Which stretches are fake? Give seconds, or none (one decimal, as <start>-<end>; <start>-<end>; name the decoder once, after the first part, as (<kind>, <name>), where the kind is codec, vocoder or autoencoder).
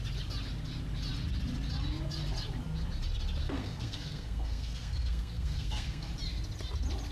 3.4-6.1 (codec, SNAC)